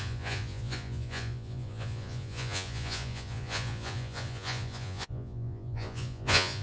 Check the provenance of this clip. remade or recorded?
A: remade